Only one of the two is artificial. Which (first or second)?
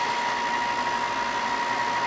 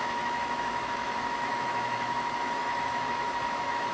second